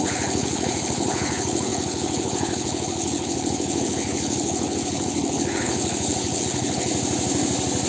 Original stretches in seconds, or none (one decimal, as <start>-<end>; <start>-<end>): 6.9-7.9